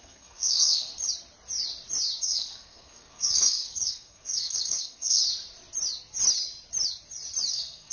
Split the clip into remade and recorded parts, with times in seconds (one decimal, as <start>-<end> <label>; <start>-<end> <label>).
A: 0.0-0.9 remade; 0.9-2.2 recorded; 2.2-5.2 remade; 5.2-7.5 recorded; 7.5-7.9 remade